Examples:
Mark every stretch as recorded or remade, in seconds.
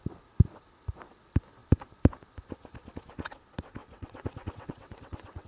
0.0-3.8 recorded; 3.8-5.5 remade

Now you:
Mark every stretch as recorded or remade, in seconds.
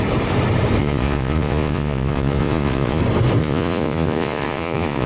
0.0-0.8 recorded; 0.8-3.0 remade; 3.0-3.4 recorded; 3.4-5.1 remade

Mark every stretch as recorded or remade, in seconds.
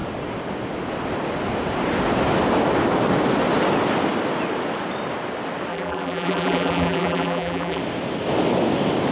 0.0-5.7 recorded; 5.7-7.8 remade; 7.8-9.1 recorded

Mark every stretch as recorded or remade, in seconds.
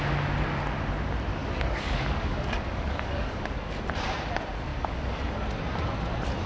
0.0-1.4 recorded; 1.4-3.7 remade; 3.7-4.7 recorded; 4.7-5.3 remade; 5.3-6.5 recorded